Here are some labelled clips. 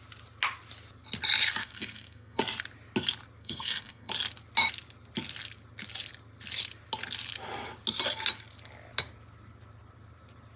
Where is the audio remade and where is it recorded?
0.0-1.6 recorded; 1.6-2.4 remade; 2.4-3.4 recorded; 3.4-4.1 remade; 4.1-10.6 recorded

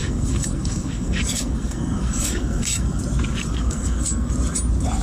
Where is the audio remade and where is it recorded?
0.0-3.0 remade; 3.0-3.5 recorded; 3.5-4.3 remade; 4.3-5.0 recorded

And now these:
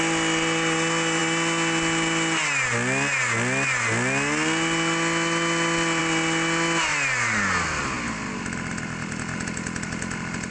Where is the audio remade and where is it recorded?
0.0-10.5 recorded

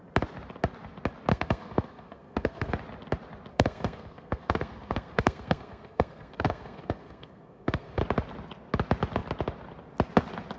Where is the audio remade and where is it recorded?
0.0-1.3 recorded; 1.3-2.7 remade; 2.7-3.5 recorded; 3.5-8.0 remade; 8.0-10.6 recorded